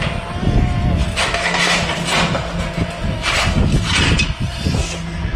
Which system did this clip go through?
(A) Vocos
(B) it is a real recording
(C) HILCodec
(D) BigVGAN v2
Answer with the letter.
B